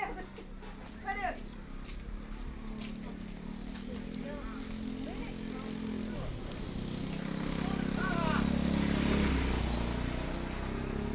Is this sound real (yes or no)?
yes